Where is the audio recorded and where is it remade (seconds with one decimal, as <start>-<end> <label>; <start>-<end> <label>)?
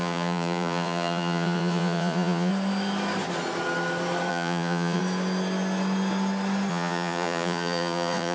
0.0-2.5 remade; 2.5-4.3 recorded; 4.3-5.0 remade; 5.0-6.7 recorded; 6.7-8.3 remade